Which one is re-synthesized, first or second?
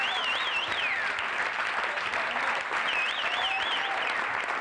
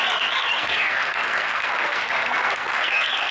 second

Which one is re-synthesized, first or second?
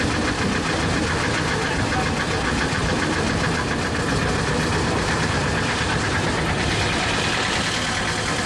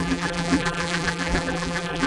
second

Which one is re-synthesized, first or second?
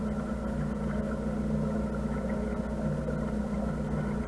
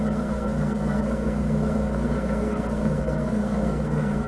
second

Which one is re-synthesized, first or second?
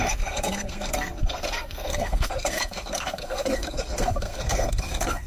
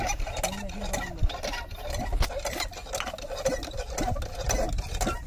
first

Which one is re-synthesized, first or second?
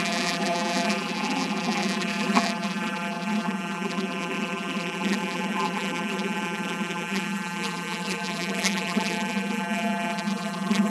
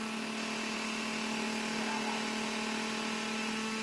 first